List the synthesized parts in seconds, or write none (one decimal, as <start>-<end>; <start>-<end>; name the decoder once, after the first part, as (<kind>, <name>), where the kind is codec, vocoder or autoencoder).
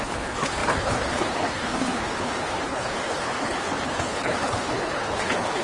0.0-5.6 (codec, HILCodec)